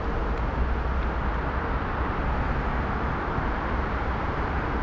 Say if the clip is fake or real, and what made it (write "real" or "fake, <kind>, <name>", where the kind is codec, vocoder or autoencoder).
real